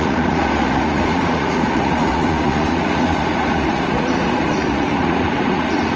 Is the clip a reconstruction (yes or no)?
yes